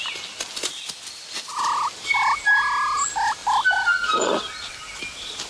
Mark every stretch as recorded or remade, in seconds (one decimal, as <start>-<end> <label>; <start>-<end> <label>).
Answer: 0.0-1.5 recorded; 1.5-2.1 remade; 2.1-5.5 recorded